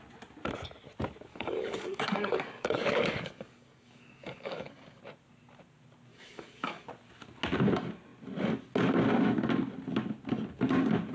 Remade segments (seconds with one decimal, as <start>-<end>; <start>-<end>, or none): 1.3-5.0; 6.1-6.9